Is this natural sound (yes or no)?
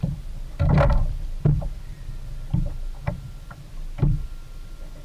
yes